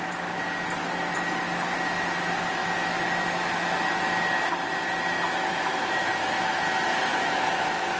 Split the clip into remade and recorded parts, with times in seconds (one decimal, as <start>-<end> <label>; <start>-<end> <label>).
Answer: 0.0-2.6 recorded; 2.6-3.5 remade; 3.5-5.5 recorded; 5.5-6.1 remade; 6.1-7.1 recorded; 7.1-8.0 remade